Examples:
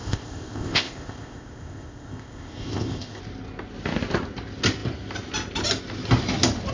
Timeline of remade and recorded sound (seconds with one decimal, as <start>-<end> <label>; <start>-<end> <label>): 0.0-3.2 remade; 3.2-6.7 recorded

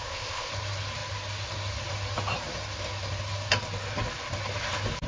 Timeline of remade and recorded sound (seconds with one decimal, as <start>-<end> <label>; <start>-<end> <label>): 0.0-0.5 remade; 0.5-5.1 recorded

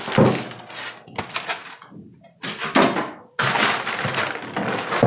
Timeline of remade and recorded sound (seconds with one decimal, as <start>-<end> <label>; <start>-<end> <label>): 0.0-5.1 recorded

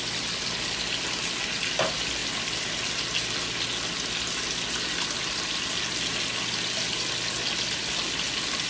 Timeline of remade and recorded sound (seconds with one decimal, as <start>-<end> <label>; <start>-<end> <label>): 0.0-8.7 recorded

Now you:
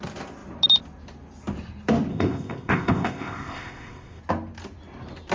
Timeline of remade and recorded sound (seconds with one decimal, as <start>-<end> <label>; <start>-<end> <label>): 0.0-2.1 recorded; 2.1-4.2 remade; 4.2-5.3 recorded

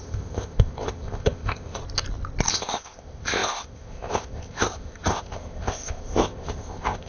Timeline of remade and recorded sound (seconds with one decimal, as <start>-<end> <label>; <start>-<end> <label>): 0.0-1.8 remade; 1.8-2.5 recorded; 2.5-7.1 remade

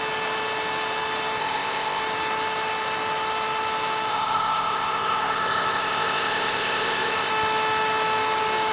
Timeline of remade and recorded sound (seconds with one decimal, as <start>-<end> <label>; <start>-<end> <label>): 0.0-1.4 recorded; 1.4-2.0 remade; 2.0-4.1 recorded; 4.1-7.3 remade; 7.3-8.7 recorded

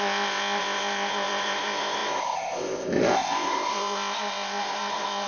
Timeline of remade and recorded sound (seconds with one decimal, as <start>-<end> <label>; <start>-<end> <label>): 0.0-5.3 remade